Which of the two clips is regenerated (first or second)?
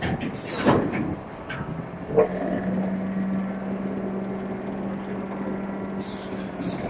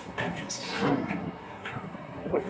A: second